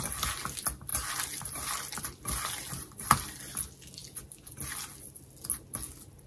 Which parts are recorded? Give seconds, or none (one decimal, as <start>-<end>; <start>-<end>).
0.0-6.3